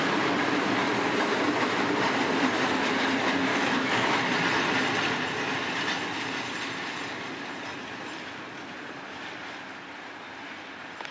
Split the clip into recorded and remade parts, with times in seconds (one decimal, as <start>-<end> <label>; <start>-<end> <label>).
0.0-3.5 recorded; 3.5-4.2 remade; 4.2-11.1 recorded

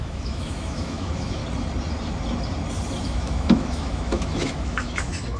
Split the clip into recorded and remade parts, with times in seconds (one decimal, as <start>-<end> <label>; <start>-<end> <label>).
0.0-1.4 remade; 1.4-3.0 recorded; 3.0-5.4 remade

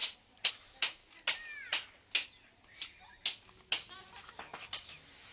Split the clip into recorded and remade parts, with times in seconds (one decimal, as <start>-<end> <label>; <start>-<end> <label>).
0.0-0.5 recorded; 0.5-1.0 remade; 1.0-4.2 recorded; 4.2-5.3 remade

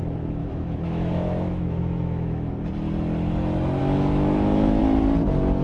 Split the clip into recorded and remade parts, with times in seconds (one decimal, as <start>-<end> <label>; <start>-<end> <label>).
0.0-0.4 recorded; 0.4-2.5 remade; 2.5-3.8 recorded; 3.8-4.8 remade; 4.8-5.6 recorded

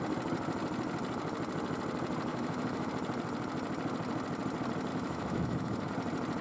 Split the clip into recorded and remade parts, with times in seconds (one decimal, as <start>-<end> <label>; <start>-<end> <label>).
0.0-2.3 recorded; 2.3-2.9 remade; 2.9-4.9 recorded; 4.9-5.9 remade; 5.9-6.4 recorded

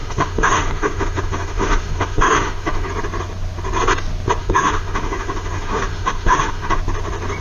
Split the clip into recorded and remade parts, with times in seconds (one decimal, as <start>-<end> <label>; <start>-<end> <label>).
0.0-2.9 remade; 2.9-4.4 recorded; 4.4-6.8 remade; 6.8-7.4 recorded